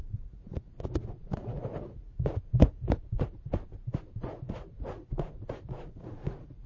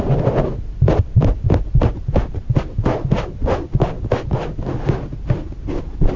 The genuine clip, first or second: second